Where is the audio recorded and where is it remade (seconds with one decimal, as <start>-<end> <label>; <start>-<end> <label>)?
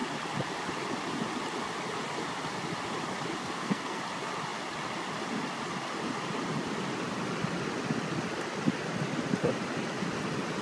0.0-3.4 recorded; 3.4-4.0 remade; 4.0-10.6 recorded